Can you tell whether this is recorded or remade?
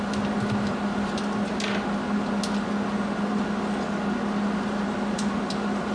recorded